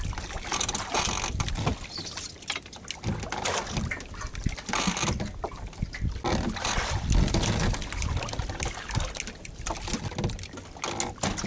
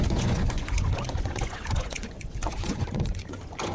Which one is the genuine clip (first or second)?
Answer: first